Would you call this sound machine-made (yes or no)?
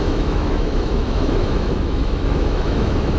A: yes